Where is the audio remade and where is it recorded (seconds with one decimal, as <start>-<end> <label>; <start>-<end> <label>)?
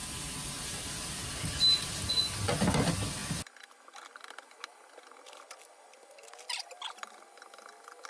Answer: 0.0-8.1 recorded